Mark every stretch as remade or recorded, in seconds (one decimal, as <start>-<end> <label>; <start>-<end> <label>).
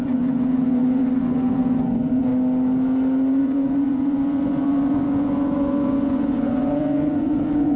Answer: 0.0-2.3 remade; 2.3-3.4 recorded; 3.4-7.8 remade